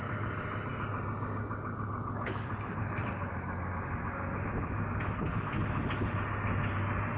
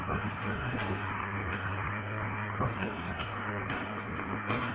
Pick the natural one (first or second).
first